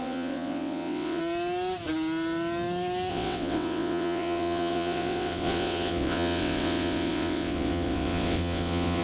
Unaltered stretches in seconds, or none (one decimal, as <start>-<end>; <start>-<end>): 1.2-3.1